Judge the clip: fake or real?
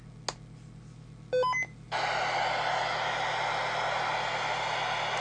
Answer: real